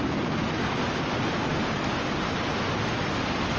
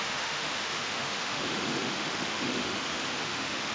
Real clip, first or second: first